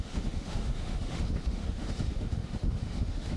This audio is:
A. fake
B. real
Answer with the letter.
A